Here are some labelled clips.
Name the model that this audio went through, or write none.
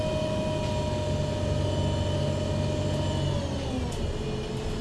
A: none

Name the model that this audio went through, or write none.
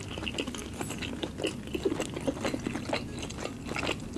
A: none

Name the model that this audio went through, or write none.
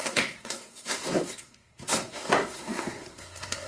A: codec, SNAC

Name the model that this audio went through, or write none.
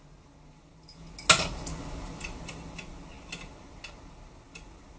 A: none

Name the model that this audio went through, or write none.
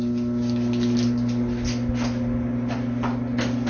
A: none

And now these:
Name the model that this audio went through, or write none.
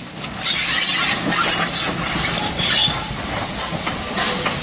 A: none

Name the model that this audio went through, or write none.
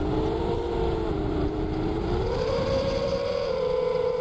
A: vocoder, BigVGAN v2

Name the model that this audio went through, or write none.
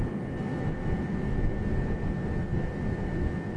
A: none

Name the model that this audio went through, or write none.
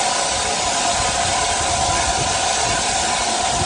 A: none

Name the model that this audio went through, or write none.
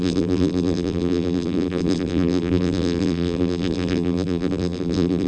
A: vocoder, BigVGAN v2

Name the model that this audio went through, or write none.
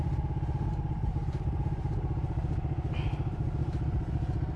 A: none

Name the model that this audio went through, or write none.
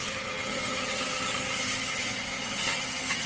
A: vocoder, HiFi-GAN